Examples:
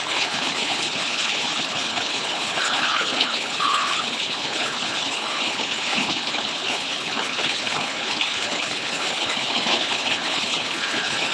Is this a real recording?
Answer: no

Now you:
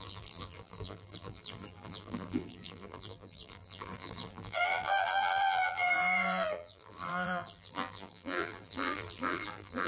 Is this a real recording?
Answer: no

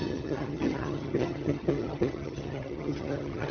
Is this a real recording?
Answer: no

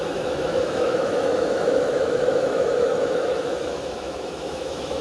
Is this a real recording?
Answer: no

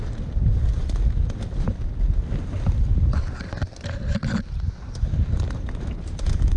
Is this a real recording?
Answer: yes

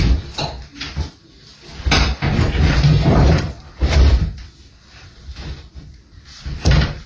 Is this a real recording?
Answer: no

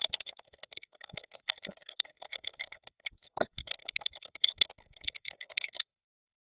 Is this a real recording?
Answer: no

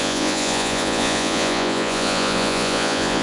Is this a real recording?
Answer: no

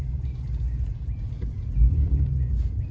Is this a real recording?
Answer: no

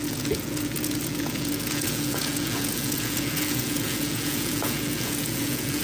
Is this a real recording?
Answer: no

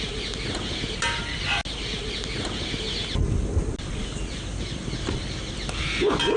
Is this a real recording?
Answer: yes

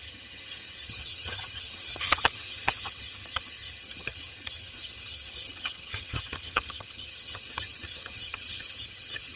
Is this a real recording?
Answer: no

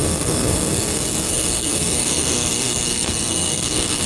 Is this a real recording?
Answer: no